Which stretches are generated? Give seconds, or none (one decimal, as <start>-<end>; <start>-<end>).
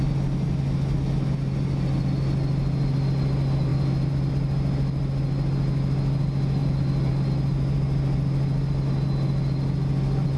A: none